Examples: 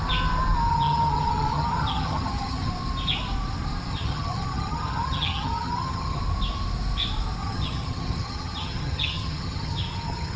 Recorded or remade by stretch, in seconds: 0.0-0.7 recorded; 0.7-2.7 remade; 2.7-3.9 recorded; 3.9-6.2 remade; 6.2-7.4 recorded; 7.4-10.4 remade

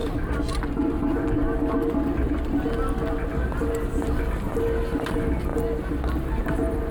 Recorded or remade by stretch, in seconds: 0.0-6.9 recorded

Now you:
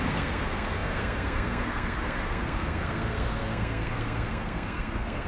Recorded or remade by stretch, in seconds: 0.0-5.3 remade

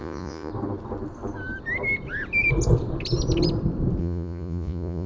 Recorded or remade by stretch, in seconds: 0.0-0.5 remade; 0.5-4.0 recorded; 4.0-5.1 remade